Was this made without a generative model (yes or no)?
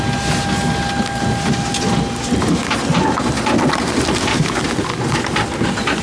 yes